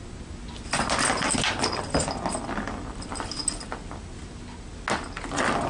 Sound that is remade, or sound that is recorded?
recorded